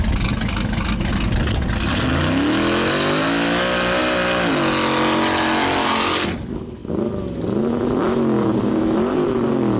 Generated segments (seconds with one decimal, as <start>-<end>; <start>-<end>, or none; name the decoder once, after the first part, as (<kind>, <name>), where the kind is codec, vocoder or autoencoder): none